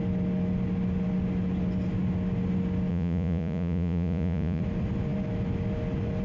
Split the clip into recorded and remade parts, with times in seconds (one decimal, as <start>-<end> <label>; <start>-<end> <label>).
0.0-2.9 recorded; 2.9-4.6 remade; 4.6-6.2 recorded